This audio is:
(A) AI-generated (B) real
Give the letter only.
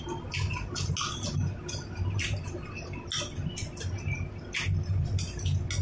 B